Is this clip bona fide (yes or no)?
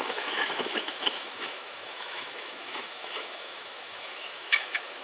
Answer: no